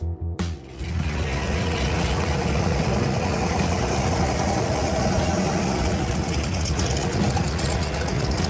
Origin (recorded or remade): remade